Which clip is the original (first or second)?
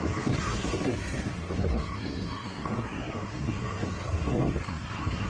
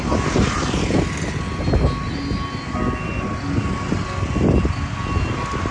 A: second